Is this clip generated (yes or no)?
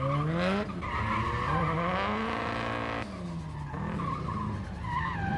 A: no